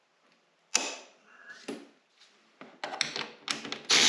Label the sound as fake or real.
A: real